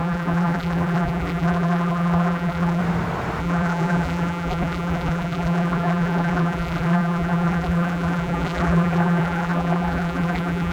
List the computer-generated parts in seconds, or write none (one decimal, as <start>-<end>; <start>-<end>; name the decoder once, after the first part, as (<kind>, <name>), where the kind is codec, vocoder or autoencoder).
0.0-2.8 (vocoder, BigVGAN v2); 3.4-10.7